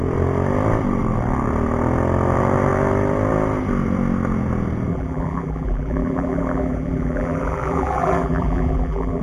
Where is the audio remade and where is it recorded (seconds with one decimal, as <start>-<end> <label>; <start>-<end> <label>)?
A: 0.0-4.9 recorded; 4.9-9.2 remade

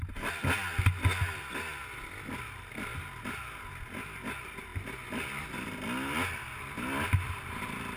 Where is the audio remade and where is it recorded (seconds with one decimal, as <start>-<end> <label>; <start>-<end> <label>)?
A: 0.0-8.0 recorded

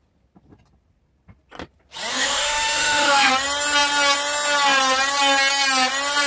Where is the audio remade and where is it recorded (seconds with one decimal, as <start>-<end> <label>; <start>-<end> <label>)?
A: 0.0-2.1 recorded; 2.1-3.3 remade; 3.3-6.3 recorded

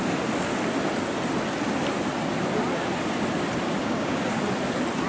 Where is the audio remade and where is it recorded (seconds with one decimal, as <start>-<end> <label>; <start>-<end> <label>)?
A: 0.0-3.8 recorded; 3.8-4.4 remade; 4.4-5.1 recorded

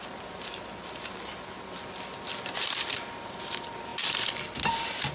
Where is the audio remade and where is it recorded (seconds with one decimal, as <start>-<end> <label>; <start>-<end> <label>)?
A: 0.0-5.1 recorded